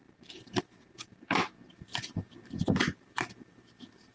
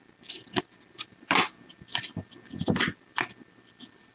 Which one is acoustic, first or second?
second